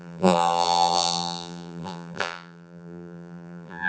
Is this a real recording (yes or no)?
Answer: no